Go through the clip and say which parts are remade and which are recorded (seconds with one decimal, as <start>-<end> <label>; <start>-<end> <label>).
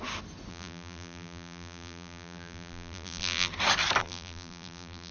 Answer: 0.0-0.5 recorded; 0.5-3.5 remade; 3.5-4.0 recorded; 4.0-5.1 remade